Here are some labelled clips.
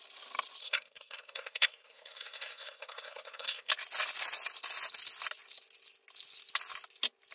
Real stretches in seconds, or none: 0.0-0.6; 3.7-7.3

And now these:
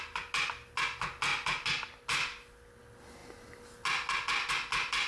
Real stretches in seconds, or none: 0.0-5.1

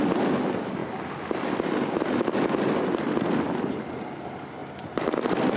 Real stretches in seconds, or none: 0.0-5.6